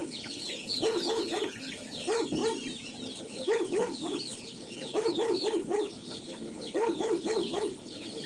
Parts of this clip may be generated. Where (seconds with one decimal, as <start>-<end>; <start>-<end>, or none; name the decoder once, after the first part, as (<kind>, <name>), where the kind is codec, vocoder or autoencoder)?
0.0-2.4 (codec, HILCodec); 3.2-8.3